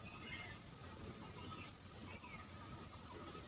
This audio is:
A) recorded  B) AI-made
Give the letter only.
A